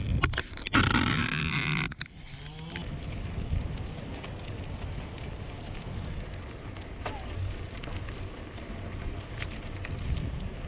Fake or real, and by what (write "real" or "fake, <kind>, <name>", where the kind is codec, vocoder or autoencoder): real